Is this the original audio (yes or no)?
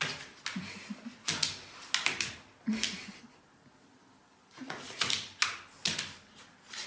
yes